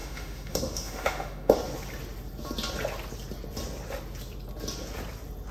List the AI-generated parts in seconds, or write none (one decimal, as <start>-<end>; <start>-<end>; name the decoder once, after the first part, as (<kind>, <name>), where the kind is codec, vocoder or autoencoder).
0.0-1.6 (autoencoder, DAC-VAE)